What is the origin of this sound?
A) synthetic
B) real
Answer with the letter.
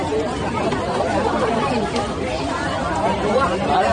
A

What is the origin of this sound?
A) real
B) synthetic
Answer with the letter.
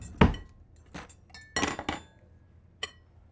A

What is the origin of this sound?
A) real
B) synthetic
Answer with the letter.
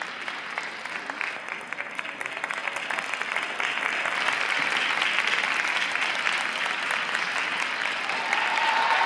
A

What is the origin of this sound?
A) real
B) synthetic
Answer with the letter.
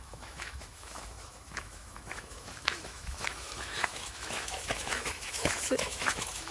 B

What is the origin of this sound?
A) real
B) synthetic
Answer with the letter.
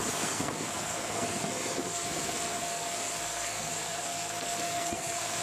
B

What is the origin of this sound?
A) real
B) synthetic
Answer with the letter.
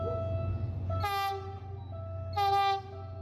A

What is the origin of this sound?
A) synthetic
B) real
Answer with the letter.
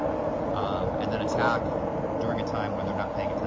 B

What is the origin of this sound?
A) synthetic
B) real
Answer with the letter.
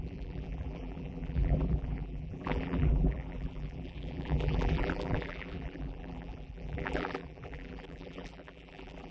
A